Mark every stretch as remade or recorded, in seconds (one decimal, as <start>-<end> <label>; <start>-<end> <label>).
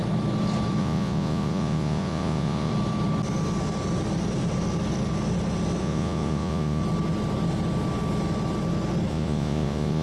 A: 0.0-0.8 recorded; 0.8-2.7 remade; 2.7-5.8 recorded; 5.8-6.8 remade; 6.8-9.1 recorded; 9.1-10.0 remade